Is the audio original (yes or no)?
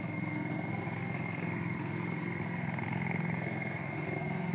no